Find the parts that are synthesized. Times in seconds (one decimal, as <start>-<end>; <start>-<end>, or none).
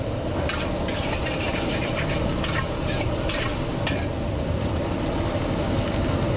1.2-5.0